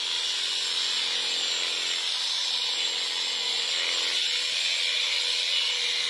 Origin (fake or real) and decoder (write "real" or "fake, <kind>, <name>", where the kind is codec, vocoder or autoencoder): real